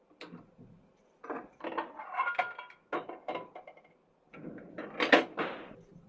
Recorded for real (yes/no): yes